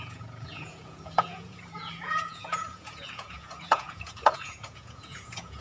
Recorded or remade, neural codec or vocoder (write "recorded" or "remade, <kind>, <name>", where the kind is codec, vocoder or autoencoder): remade, vocoder, Vocos